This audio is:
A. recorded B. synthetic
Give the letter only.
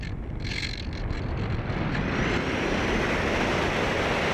A